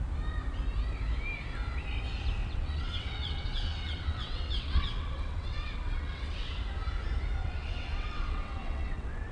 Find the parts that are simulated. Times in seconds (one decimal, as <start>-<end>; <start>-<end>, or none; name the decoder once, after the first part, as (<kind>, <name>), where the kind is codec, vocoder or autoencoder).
2.4-6.5 (vocoder, WaveNeXt); 7.4-9.3